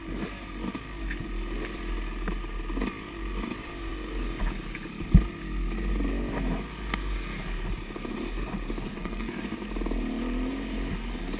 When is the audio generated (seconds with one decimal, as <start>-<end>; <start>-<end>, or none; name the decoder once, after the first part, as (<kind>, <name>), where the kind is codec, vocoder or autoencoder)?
8.9-9.4 (codec, SNAC)